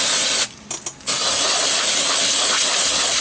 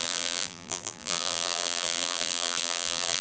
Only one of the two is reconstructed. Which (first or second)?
second